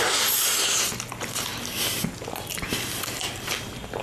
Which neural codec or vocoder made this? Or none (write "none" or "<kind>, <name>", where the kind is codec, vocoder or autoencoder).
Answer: none